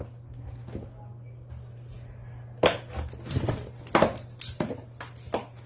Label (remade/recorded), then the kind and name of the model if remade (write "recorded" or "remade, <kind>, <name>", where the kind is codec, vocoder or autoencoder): recorded